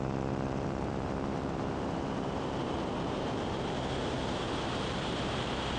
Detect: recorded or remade remade